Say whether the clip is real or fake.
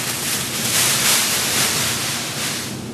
fake